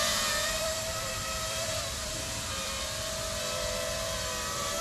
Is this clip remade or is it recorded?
remade